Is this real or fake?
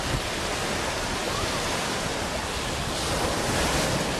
real